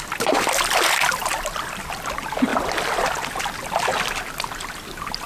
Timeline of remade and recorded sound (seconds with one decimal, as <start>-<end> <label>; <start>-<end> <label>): 0.0-1.2 recorded; 1.2-2.1 remade; 2.1-2.5 recorded; 2.5-3.9 remade; 3.9-5.3 recorded